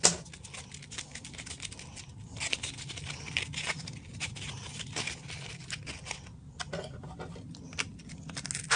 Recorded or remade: recorded